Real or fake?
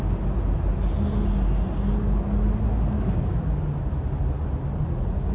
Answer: real